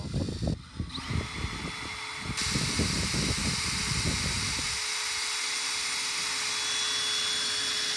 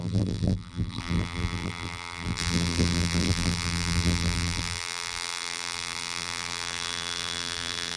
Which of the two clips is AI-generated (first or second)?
second